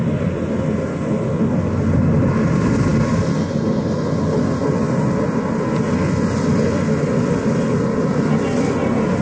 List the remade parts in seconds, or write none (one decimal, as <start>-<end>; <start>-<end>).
none